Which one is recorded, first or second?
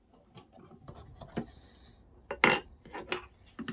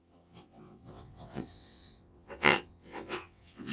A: first